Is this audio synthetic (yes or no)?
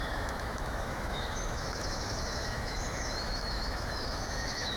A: yes